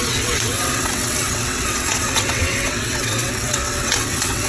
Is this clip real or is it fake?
fake